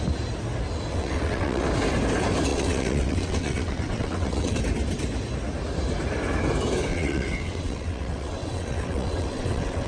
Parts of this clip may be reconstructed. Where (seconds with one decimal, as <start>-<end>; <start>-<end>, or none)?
0.9-1.7; 2.5-4.6; 6.9-9.9